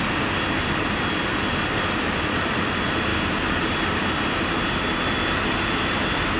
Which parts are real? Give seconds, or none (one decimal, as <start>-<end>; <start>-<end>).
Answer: 0.0-6.4